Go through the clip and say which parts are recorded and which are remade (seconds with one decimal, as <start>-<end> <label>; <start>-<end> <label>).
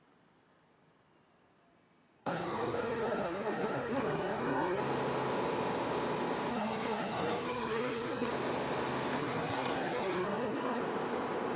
0.0-2.2 recorded; 2.2-4.8 remade; 4.8-6.5 recorded; 6.5-8.3 remade; 8.3-9.2 recorded; 9.2-10.8 remade; 10.8-11.6 recorded